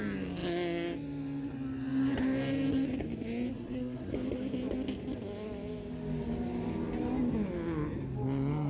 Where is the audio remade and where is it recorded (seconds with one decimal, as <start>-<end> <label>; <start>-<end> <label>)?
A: 0.0-3.5 recorded; 3.5-4.1 remade; 4.1-8.7 recorded